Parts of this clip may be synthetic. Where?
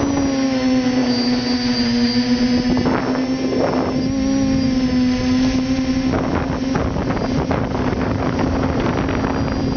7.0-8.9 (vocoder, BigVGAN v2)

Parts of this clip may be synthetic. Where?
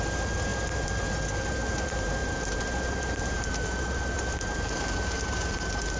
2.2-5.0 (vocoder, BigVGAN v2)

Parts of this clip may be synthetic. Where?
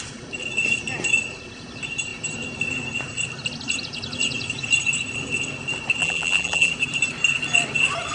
6.0-6.7 (vocoder, BigVGAN v2)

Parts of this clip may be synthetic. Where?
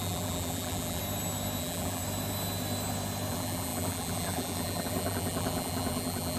0.0-1.0 (vocoder, BigVGAN v2); 1.6-2.0; 3.3-6.4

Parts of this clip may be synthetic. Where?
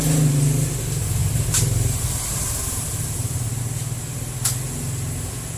1.2-3.6 (vocoder, BigVGAN v2)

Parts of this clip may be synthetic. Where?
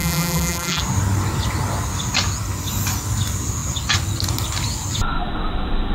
0.0-0.8 (vocoder, BigVGAN v2)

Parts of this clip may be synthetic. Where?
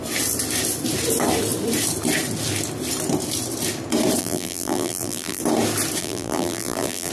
4.2-5.4 (vocoder, BigVGAN v2); 6.0-7.1